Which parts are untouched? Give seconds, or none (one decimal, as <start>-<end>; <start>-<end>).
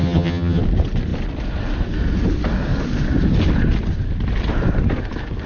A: 0.6-5.5